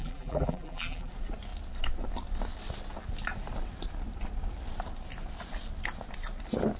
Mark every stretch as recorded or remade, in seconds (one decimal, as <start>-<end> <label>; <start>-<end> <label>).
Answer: 0.0-1.1 remade; 1.1-6.8 recorded